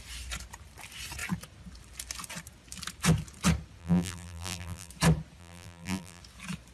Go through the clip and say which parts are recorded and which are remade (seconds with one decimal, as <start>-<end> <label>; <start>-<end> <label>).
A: 0.0-3.8 recorded; 3.8-4.9 remade; 4.9-5.4 recorded; 5.4-6.2 remade; 6.2-6.7 recorded